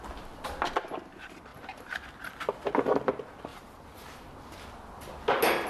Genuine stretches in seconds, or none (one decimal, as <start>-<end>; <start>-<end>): 0.0-1.5; 2.7-3.5; 4.3-5.7